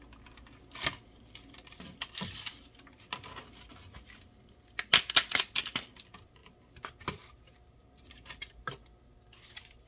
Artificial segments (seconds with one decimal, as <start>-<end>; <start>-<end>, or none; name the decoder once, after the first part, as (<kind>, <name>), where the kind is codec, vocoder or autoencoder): none